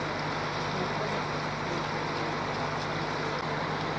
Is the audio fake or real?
real